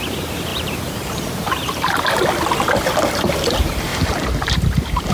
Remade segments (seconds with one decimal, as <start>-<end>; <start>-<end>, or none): 0.5-2.0; 3.9-5.1